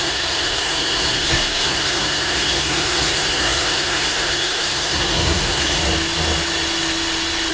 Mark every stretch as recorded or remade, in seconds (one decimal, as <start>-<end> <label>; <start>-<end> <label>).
0.0-5.8 remade; 5.8-7.5 recorded